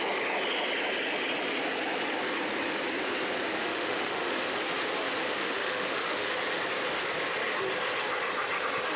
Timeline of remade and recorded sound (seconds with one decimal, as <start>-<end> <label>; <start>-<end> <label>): 0.0-3.5 recorded; 3.5-4.6 remade; 4.6-5.2 recorded; 5.2-6.4 remade; 6.4-9.0 recorded